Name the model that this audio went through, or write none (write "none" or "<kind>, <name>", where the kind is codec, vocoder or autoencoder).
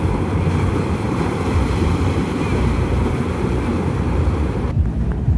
vocoder, BigVGAN v2